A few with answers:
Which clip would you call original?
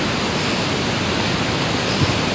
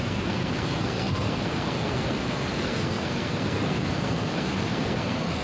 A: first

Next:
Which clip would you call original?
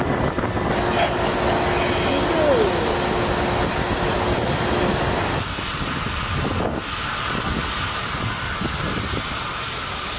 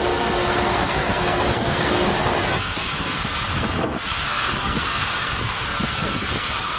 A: first